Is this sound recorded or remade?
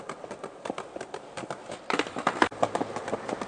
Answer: recorded